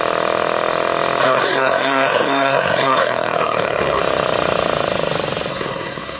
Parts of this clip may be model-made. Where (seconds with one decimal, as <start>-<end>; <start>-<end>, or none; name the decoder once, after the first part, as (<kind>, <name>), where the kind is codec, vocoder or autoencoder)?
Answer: 1.2-4.0 (codec, SNAC); 5.5-6.2